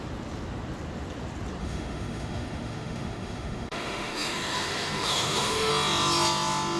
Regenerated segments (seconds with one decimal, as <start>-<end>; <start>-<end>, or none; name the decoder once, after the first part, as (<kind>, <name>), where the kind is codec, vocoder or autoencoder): 1.6-5.7 (autoencoder, DAC-VAE)